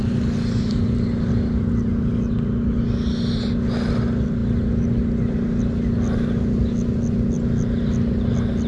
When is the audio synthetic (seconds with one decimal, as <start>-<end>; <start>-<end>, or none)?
none